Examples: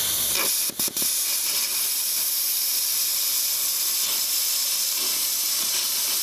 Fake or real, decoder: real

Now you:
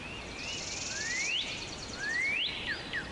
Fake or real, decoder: real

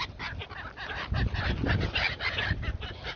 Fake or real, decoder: real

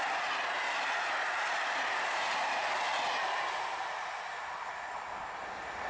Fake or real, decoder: real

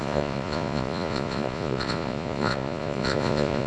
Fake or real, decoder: fake, vocoder, Vocos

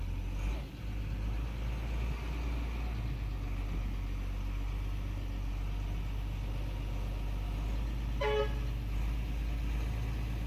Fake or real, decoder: real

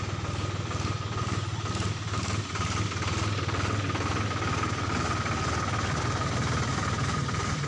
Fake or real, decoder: real